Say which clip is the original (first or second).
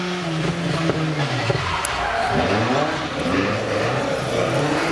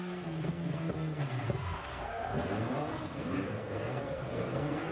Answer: first